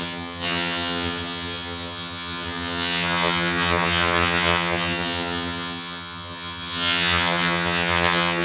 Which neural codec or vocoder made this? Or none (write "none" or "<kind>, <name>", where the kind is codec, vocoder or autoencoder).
vocoder, HiFi-GAN